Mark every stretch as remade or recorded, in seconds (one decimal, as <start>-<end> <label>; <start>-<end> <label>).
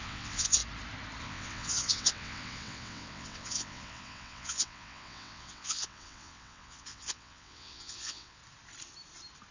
0.0-0.6 remade; 0.6-1.2 recorded; 1.2-8.4 remade; 8.4-9.5 recorded